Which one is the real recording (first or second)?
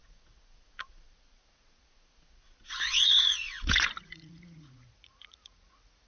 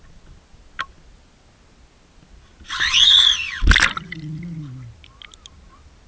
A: second